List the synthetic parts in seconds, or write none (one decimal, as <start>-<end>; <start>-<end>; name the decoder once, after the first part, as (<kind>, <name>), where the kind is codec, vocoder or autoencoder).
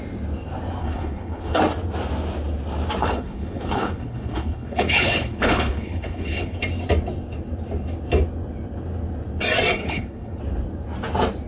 0.8-1.6 (codec, HILCodec); 3.0-6.6; 9.8-10.4